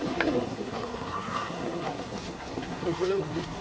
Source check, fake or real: fake